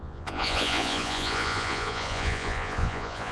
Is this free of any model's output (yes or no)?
no